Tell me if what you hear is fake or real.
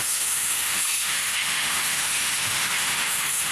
fake